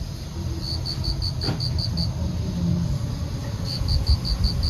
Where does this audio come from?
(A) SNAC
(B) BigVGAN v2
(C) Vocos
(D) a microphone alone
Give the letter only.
D